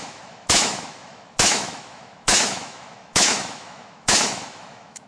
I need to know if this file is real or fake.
fake